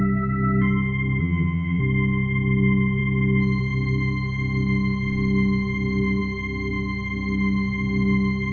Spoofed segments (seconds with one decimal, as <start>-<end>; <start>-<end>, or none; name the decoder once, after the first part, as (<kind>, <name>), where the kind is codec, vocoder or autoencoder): 1.2-1.8 (vocoder, HiFi-GAN)